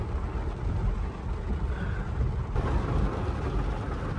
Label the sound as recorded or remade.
recorded